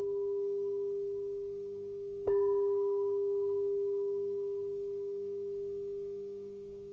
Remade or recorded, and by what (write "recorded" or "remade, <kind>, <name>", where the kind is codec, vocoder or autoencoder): remade, autoencoder, DAC-VAE